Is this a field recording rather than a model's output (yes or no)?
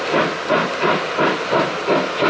yes